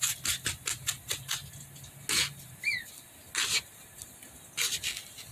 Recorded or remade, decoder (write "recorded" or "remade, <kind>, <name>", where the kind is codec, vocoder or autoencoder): recorded